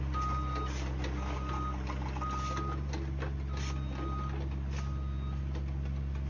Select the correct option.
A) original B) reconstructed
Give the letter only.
A